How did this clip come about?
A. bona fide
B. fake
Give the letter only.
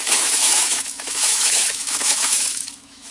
B